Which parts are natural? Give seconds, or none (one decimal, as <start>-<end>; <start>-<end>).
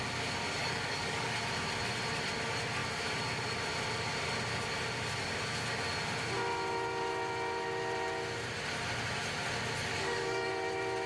0.0-0.6; 1.4-9.9; 10.5-11.1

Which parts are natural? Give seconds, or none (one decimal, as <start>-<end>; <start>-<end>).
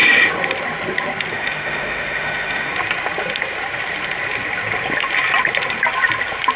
0.0-1.3; 2.7-6.6